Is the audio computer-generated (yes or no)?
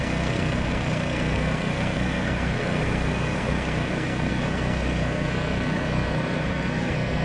yes